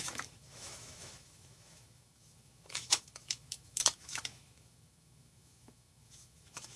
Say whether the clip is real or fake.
fake